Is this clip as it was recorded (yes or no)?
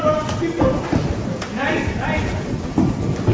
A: yes